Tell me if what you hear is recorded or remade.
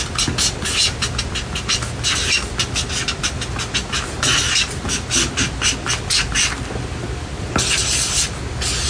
recorded